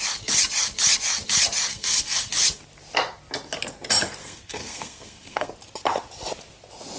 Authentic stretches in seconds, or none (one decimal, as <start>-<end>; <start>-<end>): 0.0-1.7; 2.3-4.2; 5.5-7.0